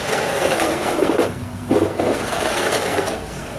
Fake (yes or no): yes